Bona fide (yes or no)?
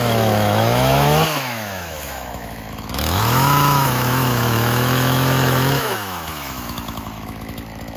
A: no